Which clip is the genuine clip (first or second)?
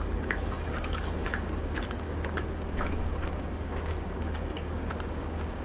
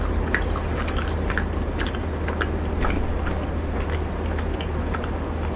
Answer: second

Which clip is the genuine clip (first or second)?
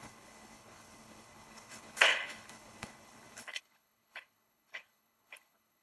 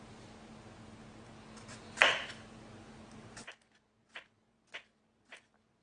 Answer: second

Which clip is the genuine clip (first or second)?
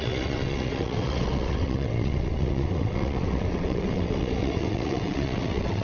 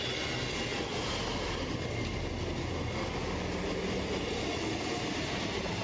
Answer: second